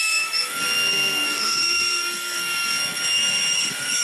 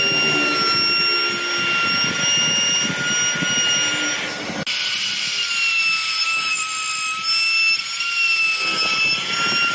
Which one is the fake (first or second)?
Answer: first